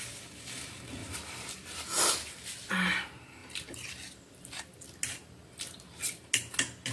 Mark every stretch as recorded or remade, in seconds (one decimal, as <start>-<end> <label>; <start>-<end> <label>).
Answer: 0.0-6.9 recorded